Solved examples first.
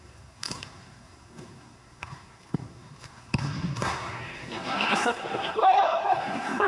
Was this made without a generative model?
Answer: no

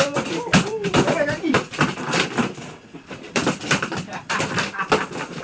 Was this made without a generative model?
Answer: no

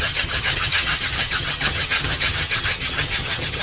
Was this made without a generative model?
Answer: no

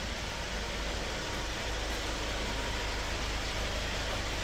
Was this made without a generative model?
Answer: yes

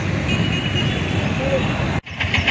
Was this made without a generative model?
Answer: yes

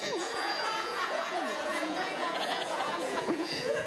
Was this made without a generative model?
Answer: no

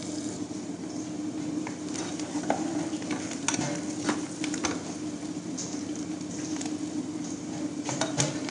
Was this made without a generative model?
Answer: yes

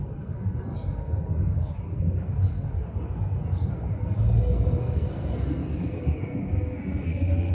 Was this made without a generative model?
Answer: no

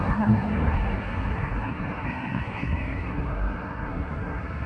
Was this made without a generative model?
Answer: no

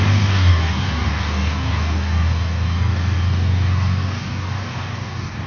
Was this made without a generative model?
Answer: no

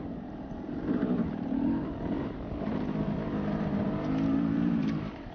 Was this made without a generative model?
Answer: no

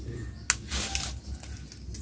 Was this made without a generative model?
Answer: yes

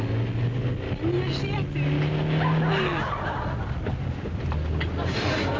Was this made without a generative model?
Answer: yes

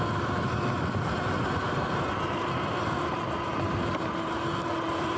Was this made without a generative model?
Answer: yes